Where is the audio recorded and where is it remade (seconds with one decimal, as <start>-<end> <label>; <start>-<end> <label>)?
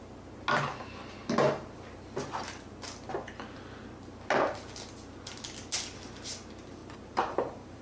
0.0-6.8 recorded; 6.8-7.8 remade